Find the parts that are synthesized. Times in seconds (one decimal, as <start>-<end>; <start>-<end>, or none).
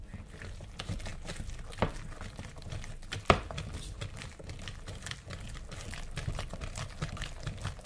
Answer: none